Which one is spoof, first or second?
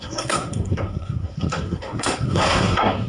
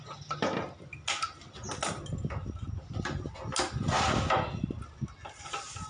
first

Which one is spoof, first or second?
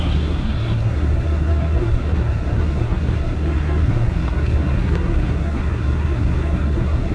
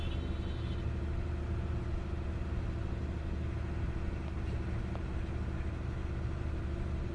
first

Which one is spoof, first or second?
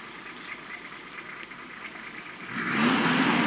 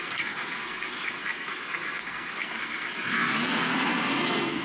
second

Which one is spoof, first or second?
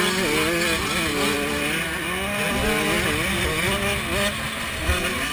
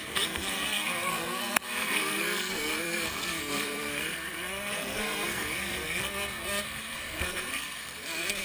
second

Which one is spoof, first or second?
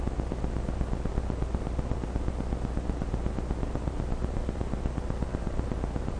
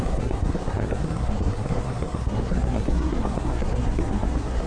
second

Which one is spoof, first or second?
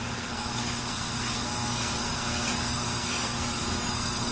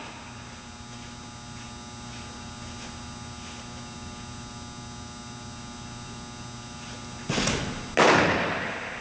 first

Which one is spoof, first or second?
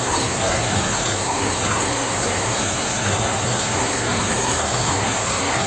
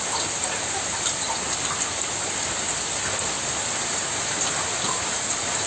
first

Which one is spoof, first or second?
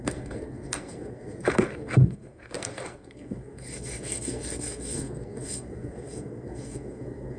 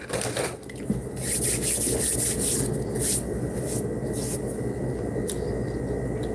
first